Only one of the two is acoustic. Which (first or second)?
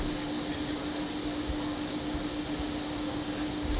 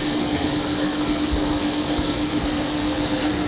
first